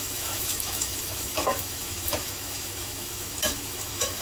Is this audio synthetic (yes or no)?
yes